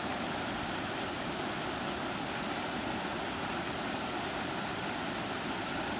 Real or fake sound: real